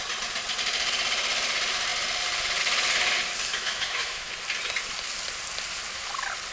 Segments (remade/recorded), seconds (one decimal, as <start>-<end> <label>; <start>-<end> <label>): 0.0-3.5 recorded; 3.5-4.3 remade; 4.3-6.5 recorded